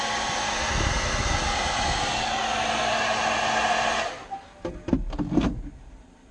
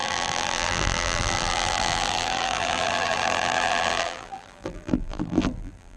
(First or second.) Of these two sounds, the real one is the first